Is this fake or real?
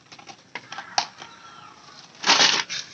real